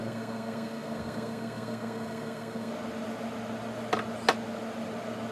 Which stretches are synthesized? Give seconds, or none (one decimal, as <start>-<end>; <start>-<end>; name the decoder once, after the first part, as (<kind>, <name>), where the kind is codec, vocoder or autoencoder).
0.0-2.7 (codec, SNAC)